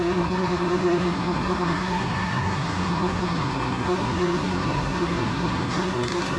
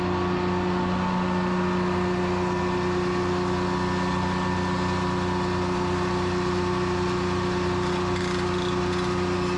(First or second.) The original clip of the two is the second